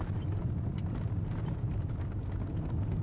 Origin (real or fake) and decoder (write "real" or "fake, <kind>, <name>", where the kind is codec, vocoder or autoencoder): real